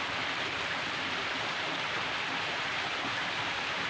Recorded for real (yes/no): yes